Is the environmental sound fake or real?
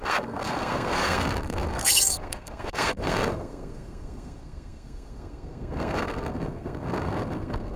fake